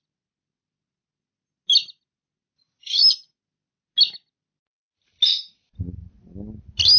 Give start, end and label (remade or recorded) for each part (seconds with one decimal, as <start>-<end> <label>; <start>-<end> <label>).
0.0-7.0 recorded